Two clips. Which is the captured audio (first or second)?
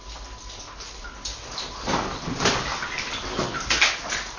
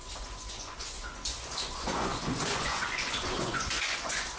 first